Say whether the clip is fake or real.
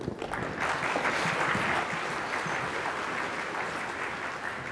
real